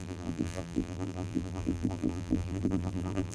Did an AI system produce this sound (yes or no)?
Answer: yes